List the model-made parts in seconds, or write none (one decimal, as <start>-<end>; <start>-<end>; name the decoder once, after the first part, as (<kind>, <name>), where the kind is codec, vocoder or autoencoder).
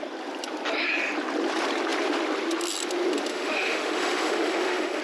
3.3-5.0 (autoencoder, DAC-VAE)